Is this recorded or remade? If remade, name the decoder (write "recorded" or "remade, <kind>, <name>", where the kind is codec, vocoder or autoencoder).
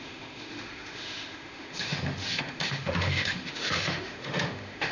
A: remade, autoencoder, DAC-VAE